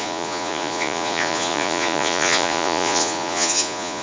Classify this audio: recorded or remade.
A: remade